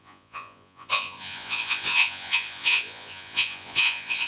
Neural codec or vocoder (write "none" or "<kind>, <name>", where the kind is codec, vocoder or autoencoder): vocoder, Vocos